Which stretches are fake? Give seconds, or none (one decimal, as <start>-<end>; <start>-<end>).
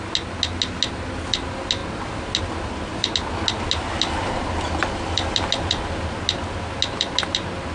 none